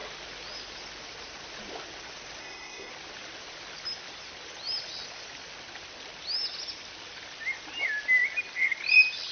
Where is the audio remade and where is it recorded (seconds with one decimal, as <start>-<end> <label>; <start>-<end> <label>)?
0.0-2.4 recorded; 2.4-2.9 remade; 2.9-9.3 recorded